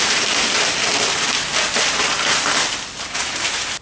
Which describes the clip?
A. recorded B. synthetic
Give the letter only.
A